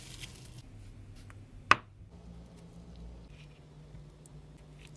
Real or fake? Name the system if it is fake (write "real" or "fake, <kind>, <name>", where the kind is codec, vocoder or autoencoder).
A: real